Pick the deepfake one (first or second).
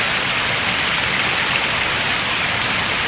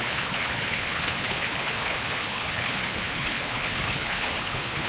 second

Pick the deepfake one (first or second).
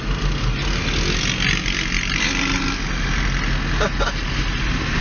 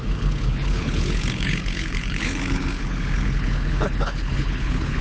second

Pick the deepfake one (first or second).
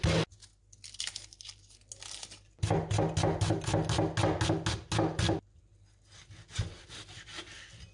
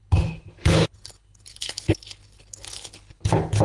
second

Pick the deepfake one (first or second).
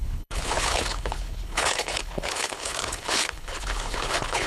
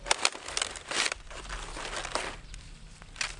first